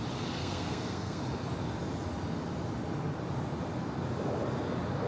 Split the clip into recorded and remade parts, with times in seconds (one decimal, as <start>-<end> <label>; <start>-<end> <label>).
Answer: 0.0-0.4 recorded; 0.4-1.2 remade; 1.2-5.1 recorded